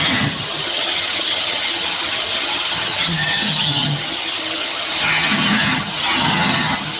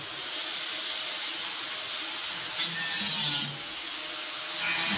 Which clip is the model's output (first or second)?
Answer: first